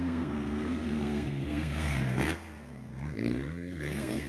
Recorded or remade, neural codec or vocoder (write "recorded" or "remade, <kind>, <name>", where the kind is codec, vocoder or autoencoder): remade, codec, SNAC